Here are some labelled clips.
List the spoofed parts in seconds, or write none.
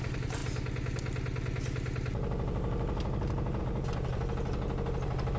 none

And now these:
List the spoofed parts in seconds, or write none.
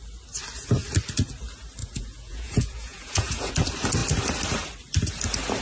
1.8-3.5